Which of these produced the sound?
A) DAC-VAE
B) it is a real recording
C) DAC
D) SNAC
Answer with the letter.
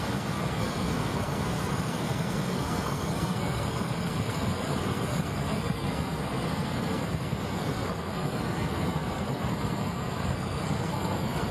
D